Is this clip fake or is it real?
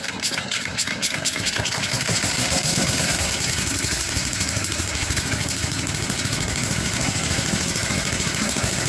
fake